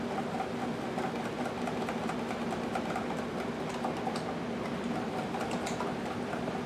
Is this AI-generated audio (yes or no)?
no